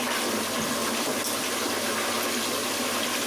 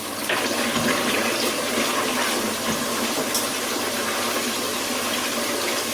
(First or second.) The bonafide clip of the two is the first